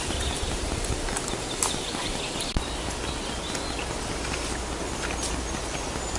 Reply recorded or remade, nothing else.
recorded